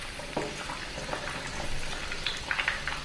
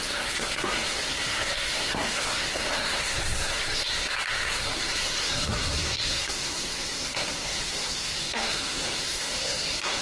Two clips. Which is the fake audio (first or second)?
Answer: second